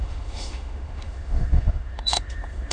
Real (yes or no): no